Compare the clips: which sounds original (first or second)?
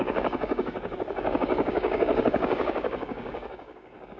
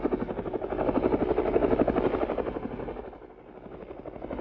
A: second